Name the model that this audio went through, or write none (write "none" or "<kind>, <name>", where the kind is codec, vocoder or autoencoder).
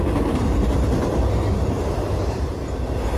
none